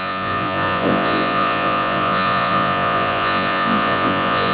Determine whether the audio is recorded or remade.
remade